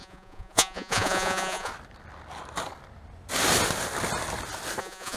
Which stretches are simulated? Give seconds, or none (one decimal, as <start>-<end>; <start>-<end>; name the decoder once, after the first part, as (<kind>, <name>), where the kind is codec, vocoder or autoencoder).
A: 0.0-1.7 (vocoder, Vocos); 4.8-5.2